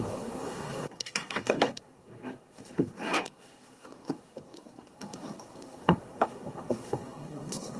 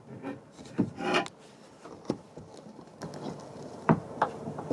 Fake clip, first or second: first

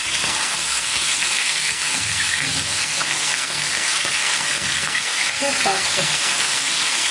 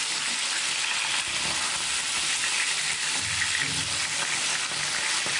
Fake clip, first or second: first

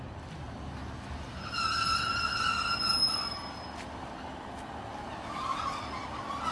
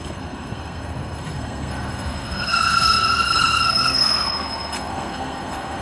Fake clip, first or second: second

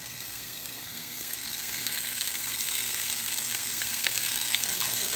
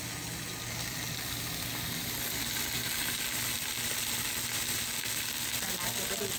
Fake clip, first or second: first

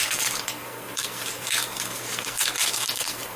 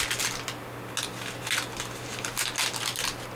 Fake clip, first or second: first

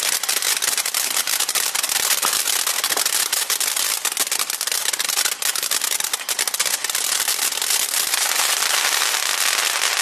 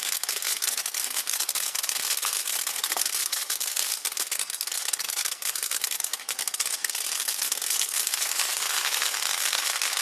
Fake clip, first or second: second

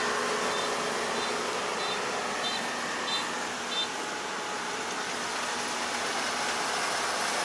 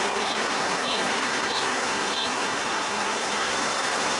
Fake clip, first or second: second